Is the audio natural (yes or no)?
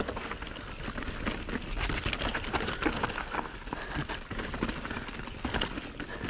yes